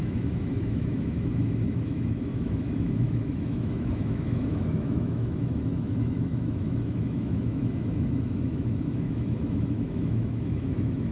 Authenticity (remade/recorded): remade